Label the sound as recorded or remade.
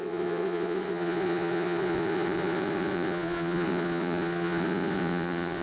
remade